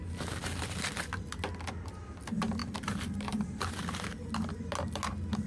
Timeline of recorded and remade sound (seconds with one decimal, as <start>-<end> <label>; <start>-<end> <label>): 0.0-2.6 recorded; 2.6-3.8 remade; 3.8-5.5 recorded